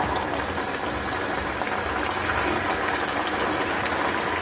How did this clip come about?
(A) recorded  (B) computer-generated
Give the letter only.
A